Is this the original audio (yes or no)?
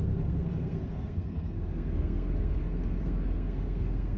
no